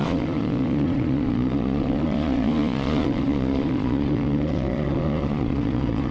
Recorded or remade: remade